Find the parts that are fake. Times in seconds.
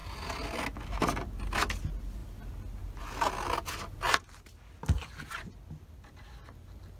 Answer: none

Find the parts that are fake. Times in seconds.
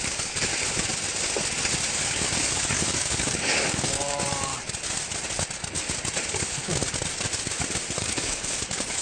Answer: 0.0-0.5 (codec, DAC); 1.9-4.5; 6.3-6.7; 8.0-9.0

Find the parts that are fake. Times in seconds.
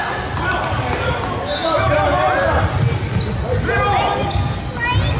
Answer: 4.1-4.6 (codec, DAC)